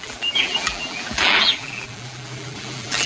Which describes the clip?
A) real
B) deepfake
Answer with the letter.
B